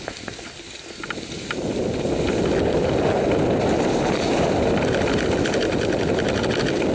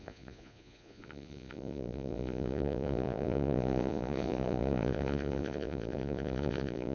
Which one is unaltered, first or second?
first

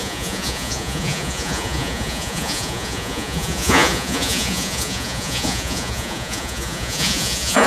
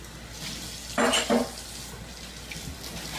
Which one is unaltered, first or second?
second